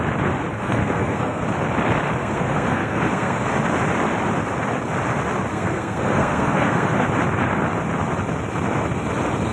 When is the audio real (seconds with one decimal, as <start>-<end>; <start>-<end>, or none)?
0.0-0.5; 1.4-2.2; 3.5-5.5; 7.1-9.5